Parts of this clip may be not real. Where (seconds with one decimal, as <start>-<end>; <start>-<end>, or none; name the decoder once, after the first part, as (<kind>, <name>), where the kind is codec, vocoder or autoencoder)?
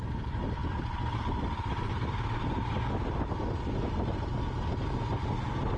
none